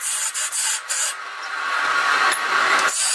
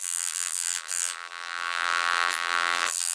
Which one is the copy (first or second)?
second